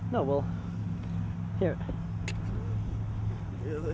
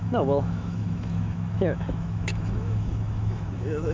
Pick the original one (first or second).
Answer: first